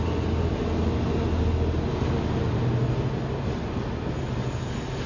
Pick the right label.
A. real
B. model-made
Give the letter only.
A